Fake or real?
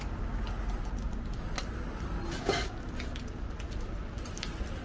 real